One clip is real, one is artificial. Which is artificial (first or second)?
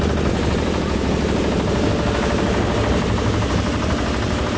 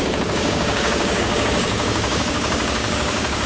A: second